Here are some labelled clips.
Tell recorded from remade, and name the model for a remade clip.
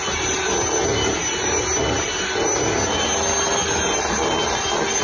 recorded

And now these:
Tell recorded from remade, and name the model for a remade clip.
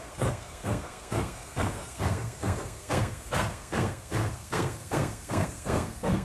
remade, codec, SNAC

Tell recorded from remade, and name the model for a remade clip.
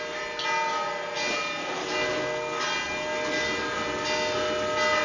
recorded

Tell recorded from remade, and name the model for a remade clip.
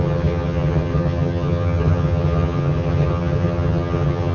remade, vocoder, HiFi-GAN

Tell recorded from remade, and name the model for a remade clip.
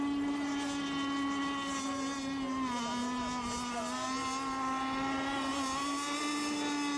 recorded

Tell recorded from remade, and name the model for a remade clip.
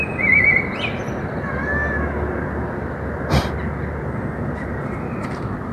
recorded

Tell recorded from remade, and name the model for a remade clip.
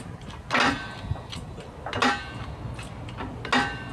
recorded